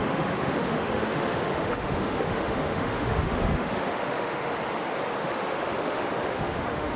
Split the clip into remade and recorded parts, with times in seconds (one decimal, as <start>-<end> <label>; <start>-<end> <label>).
0.0-4.5 remade; 4.5-5.2 recorded; 5.2-7.0 remade